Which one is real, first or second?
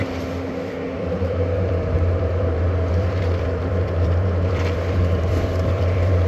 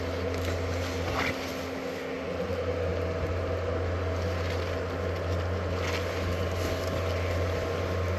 second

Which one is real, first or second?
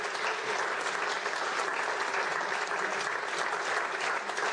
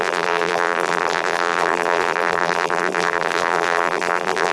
first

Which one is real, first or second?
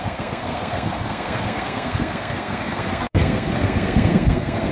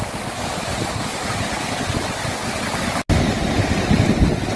second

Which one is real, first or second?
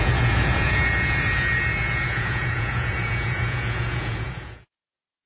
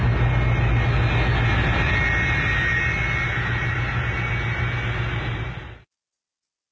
second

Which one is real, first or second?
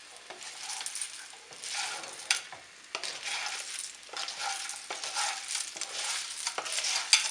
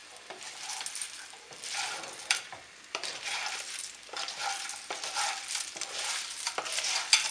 first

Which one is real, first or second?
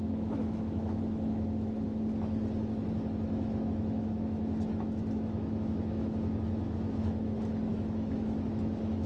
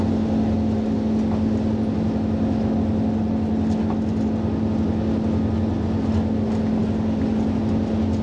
second